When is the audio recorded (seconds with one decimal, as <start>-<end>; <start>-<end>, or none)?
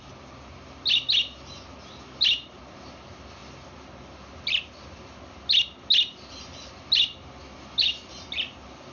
0.0-8.9